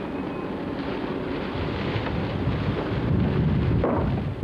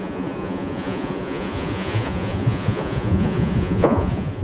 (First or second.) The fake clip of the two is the second